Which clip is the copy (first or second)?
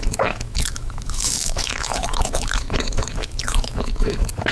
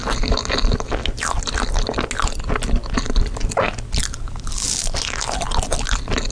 first